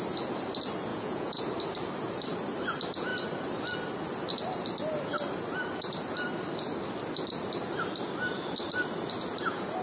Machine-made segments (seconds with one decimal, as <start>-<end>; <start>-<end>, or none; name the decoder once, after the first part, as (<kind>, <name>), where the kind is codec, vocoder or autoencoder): 0.9-1.4 (vocoder, Vocos)